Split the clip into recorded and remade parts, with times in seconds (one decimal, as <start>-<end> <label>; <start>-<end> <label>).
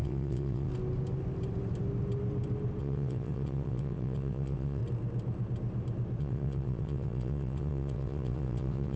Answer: 0.0-0.7 remade; 0.7-2.8 recorded; 2.8-4.8 remade; 4.8-6.2 recorded; 6.2-9.0 remade